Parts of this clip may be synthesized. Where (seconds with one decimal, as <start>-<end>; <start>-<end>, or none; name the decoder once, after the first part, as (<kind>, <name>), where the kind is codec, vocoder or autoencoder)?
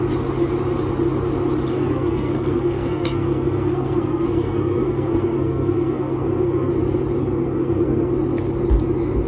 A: 1.7-6.7 (codec, SNAC); 7.2-8.1